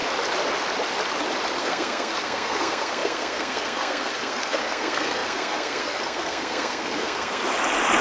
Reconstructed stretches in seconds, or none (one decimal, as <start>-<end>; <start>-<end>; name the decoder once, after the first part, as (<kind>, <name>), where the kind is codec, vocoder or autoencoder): 1.6-7.4 (codec, SNAC)